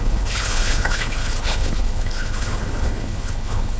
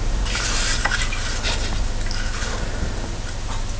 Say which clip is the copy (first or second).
first